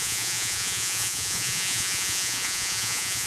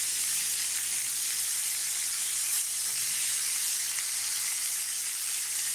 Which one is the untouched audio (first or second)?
second